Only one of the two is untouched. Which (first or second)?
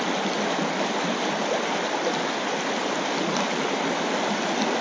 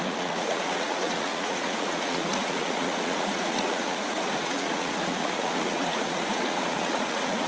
first